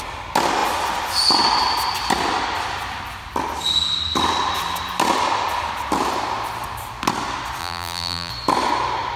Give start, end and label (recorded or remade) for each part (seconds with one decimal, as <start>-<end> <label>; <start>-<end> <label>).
0.0-7.6 recorded; 7.6-8.3 remade; 8.3-9.2 recorded